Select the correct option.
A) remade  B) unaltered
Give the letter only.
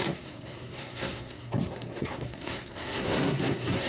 A